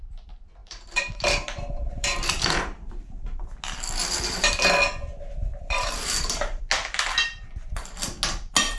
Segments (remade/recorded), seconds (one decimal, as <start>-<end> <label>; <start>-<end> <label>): 0.0-0.6 recorded; 0.6-3.4 remade; 3.4-5.5 recorded; 5.5-6.6 remade; 6.6-8.8 recorded